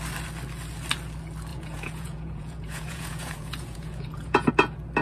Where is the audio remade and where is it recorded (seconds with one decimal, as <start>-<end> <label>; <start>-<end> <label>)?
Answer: 0.0-1.5 recorded; 1.5-4.5 remade; 4.5-5.0 recorded